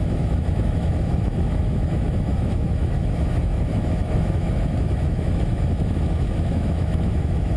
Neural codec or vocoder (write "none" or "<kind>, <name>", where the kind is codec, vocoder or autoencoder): autoencoder, DAC-VAE